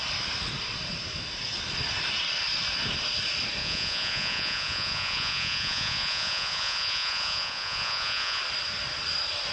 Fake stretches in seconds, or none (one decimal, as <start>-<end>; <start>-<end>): 3.6-8.4